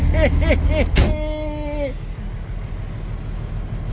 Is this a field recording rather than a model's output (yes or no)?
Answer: yes